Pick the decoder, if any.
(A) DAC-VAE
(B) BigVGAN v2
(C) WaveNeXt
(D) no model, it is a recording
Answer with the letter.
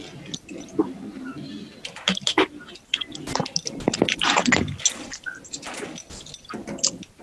D